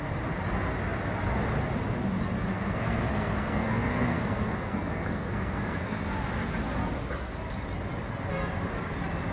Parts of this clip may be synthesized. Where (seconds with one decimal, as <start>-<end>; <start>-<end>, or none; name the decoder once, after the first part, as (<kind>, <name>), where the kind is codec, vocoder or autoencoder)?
2.5-6.1 (codec, SNAC)